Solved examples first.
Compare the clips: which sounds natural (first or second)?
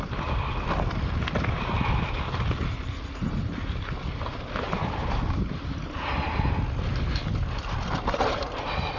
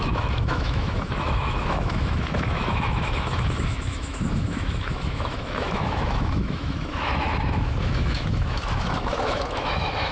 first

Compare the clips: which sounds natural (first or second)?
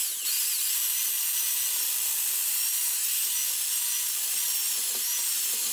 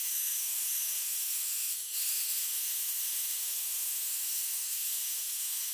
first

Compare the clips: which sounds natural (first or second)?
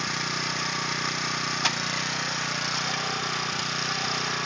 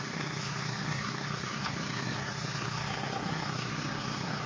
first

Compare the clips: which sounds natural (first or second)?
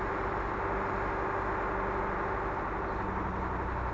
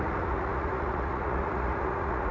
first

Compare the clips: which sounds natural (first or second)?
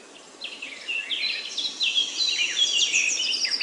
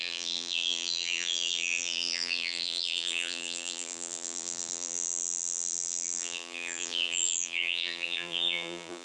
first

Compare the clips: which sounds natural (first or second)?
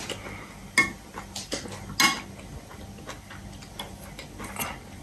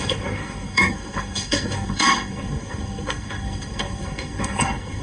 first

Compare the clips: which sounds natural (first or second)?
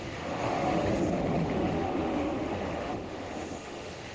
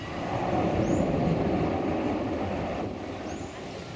second